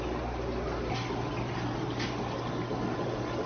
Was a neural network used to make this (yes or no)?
no